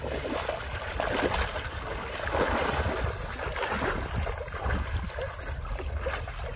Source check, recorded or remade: recorded